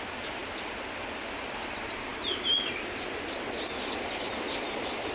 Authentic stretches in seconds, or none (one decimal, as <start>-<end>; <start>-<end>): 0.0-5.1